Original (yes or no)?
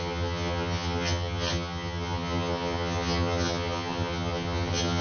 no